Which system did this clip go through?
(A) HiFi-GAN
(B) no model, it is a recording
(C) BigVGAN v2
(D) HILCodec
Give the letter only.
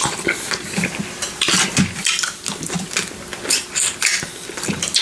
B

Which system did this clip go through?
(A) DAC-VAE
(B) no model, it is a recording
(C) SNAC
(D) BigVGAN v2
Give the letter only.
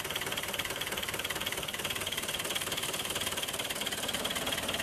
D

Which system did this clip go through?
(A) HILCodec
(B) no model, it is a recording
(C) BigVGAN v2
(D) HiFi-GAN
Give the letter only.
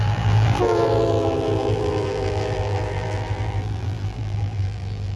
C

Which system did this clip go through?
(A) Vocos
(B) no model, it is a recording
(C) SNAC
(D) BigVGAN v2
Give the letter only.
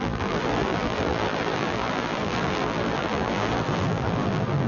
D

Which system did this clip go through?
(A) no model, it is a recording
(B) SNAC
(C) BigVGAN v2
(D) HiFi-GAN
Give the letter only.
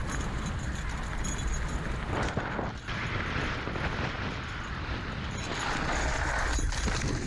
A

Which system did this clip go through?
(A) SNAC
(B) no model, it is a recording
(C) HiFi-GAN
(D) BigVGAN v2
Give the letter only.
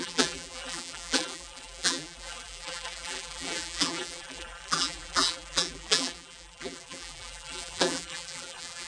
D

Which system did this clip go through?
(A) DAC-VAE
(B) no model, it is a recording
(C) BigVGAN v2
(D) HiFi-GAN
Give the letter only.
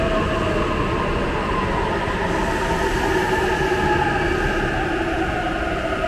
B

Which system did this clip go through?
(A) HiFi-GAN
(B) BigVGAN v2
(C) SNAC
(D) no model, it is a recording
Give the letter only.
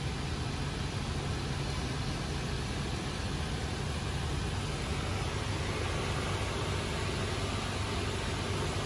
D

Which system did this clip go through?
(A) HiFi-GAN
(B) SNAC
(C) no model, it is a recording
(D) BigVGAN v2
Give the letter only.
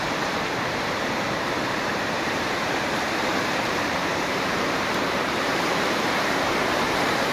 D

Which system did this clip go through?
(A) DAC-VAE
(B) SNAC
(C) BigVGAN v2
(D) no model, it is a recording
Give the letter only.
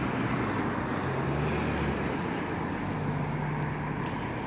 D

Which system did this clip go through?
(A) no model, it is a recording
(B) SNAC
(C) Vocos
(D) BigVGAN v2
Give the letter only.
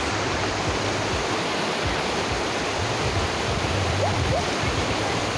D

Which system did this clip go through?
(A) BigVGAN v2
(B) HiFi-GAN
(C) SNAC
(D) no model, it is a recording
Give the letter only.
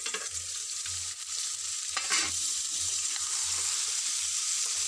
A